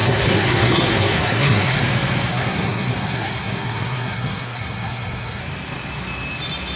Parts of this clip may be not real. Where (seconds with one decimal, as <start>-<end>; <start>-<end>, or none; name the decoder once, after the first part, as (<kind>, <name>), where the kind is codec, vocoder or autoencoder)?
0.0-1.8 (codec, SNAC); 2.3-5.4